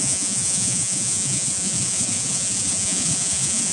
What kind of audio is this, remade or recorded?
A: remade